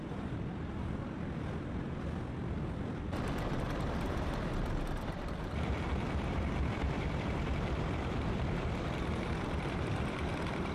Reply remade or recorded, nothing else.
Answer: remade